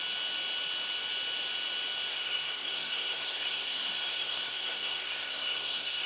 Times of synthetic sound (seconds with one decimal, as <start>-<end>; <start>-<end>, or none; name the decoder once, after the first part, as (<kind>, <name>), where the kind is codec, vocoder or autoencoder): 2.1-6.1 (codec, SNAC)